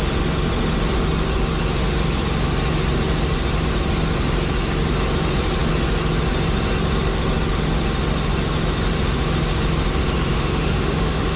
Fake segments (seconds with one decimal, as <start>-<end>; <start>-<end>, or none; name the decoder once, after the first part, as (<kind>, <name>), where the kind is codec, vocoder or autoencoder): 10.3-11.4 (autoencoder, DAC-VAE)